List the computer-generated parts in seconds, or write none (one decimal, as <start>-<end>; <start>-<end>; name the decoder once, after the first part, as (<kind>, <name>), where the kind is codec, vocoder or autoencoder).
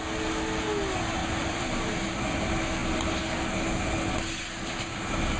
1.2-2.4 (vocoder, BigVGAN v2)